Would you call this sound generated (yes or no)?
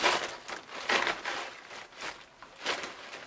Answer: no